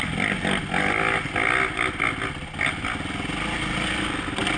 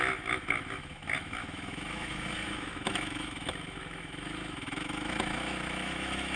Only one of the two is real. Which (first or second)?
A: first